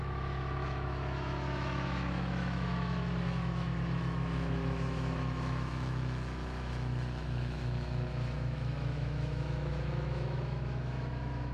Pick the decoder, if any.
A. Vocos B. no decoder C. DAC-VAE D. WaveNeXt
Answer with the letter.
C